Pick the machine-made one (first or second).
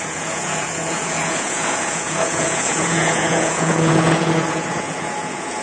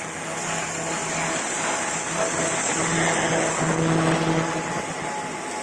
first